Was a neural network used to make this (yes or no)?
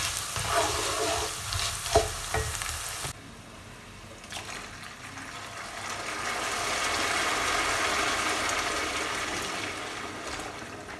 no